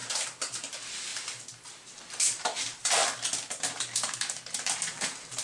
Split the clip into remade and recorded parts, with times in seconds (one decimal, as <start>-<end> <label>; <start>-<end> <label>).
0.0-3.0 remade; 3.0-3.7 recorded; 3.7-5.4 remade